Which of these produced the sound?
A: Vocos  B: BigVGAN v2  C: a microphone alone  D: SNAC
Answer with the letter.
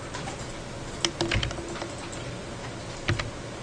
C